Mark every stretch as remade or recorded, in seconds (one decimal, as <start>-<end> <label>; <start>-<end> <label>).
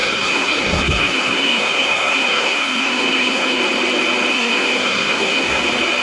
0.0-3.6 remade; 3.6-4.3 recorded; 4.3-5.6 remade; 5.6-6.0 recorded